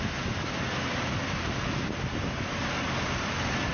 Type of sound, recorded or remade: recorded